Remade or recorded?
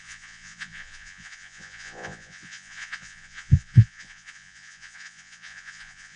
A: remade